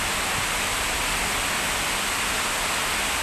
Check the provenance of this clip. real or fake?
real